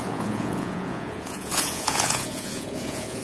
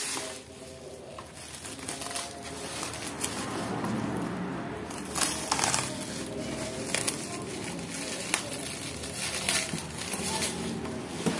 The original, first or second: second